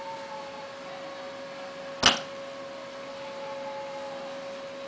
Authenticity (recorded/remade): recorded